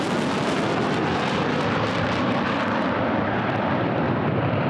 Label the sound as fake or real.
fake